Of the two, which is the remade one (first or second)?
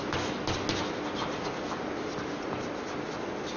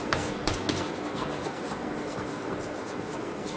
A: second